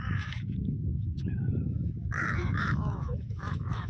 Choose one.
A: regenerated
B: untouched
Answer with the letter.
A